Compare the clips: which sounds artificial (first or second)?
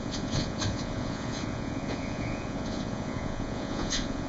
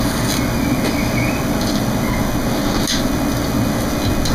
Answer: first